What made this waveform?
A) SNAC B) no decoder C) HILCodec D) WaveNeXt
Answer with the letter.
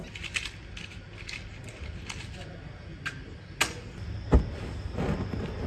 B